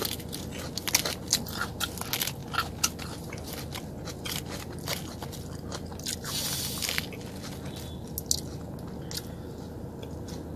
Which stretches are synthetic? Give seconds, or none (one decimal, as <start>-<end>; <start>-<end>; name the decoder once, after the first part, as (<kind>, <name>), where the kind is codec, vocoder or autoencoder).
none